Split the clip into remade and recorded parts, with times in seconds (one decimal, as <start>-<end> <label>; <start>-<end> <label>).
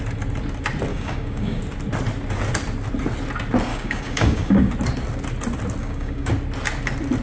0.0-0.9 recorded; 0.9-1.6 remade; 1.6-3.7 recorded; 3.7-4.7 remade; 4.7-5.8 recorded; 5.8-6.3 remade; 6.3-7.2 recorded